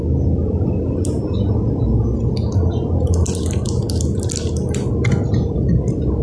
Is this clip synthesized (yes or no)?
no